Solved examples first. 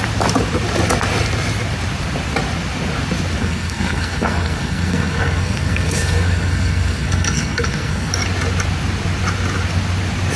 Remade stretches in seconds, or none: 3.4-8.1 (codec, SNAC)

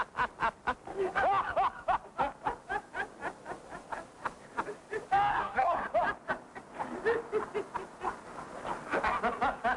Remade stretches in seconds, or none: 5.3-5.9 (codec, SNAC)